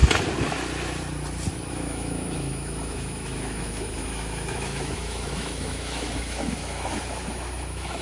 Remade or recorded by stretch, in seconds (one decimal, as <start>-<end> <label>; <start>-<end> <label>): 0.0-1.7 recorded; 1.7-8.0 remade